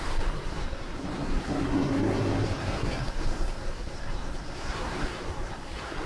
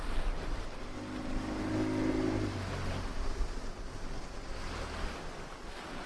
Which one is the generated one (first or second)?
first